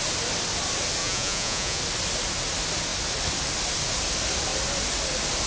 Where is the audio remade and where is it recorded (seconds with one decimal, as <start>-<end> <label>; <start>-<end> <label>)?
0.0-1.0 recorded; 1.0-1.8 remade; 1.8-5.5 recorded